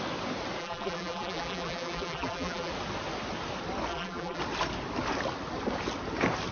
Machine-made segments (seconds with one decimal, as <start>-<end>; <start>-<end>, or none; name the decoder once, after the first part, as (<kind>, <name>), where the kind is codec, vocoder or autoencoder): 0.6-2.7 (vocoder, BigVGAN v2); 3.9-4.4